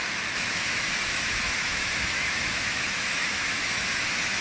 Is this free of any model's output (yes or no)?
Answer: no